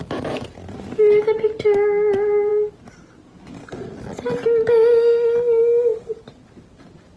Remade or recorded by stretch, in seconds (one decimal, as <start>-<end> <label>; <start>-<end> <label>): 0.0-7.2 recorded